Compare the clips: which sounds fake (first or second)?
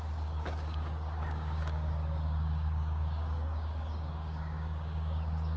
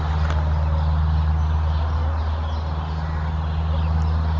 first